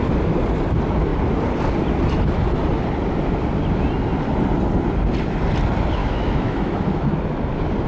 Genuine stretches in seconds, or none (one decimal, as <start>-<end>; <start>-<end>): 0.0-6.0; 7.1-7.9